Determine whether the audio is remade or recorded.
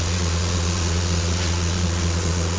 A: remade